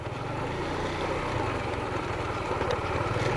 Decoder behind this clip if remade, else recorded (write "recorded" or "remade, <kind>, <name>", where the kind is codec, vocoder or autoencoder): recorded